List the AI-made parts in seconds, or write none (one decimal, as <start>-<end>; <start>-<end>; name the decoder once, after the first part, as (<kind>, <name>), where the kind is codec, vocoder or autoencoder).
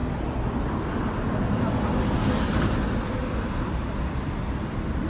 none